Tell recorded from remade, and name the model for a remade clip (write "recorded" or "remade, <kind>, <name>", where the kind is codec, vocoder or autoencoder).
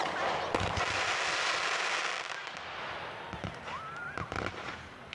recorded